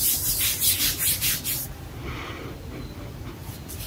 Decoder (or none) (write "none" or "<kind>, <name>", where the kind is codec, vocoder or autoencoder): vocoder, BigVGAN v2